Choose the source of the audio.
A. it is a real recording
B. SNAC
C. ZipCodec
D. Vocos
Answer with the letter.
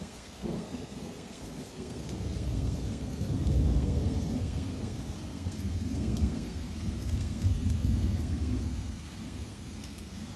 B